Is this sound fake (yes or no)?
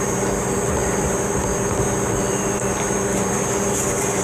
yes